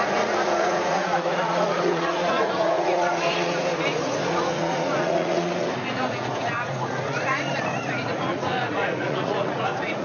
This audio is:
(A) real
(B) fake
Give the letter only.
B